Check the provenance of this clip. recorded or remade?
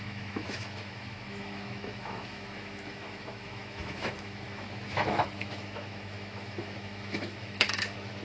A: remade